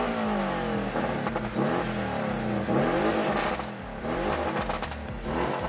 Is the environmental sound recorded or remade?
recorded